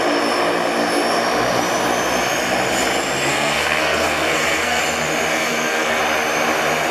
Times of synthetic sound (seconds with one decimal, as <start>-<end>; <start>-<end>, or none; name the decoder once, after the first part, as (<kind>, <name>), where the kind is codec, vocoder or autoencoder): 3.3-4.8 (codec, SNAC); 5.3-6.0